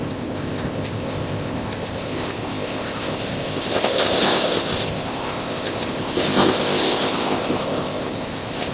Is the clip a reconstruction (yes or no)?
yes